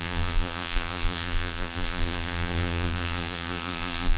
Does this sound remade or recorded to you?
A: remade